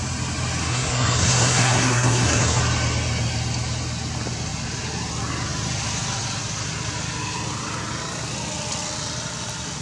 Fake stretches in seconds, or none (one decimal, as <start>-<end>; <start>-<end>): 0.6-2.6